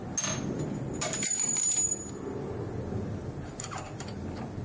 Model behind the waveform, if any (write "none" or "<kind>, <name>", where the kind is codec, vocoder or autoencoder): none